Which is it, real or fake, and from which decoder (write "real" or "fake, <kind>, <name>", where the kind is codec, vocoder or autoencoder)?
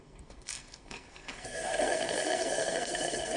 fake, codec, SNAC